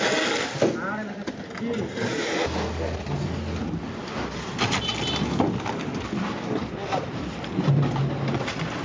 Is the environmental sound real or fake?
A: real